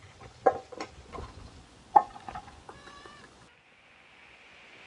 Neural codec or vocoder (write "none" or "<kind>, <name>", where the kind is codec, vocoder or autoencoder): vocoder, Vocos